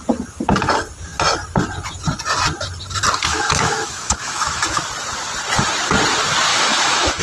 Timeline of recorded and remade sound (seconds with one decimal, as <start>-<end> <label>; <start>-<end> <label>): 0.0-3.3 recorded; 3.3-4.8 remade; 4.8-6.5 recorded; 6.5-7.2 remade